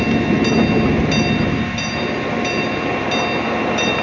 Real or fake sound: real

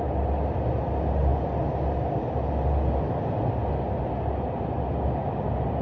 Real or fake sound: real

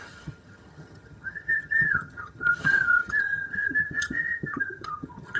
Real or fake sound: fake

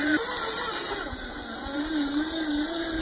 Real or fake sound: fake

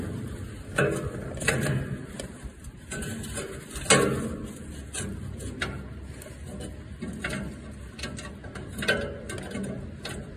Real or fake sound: real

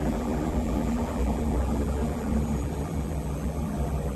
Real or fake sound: fake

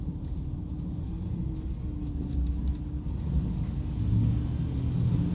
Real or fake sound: real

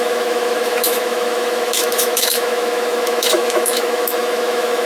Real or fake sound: fake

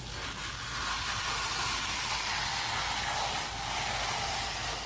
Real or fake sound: real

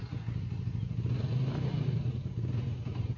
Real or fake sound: real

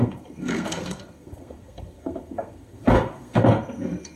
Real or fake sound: fake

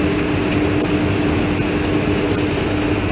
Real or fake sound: real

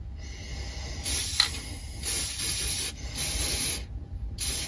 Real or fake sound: real